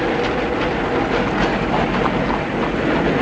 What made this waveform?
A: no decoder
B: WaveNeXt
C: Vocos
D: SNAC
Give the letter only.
A